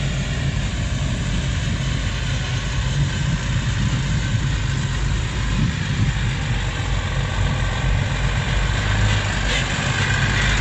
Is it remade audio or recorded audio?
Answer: recorded